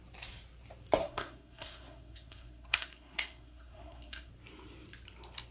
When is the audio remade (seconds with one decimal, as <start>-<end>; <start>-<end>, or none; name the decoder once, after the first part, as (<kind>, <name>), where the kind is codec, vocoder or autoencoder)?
1.0-4.3 (codec, SNAC)